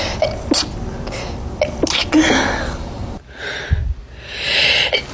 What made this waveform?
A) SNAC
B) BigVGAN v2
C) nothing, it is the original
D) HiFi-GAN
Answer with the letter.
C